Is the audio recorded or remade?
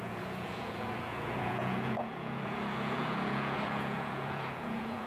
remade